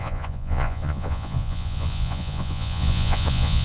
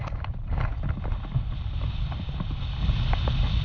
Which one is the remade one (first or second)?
first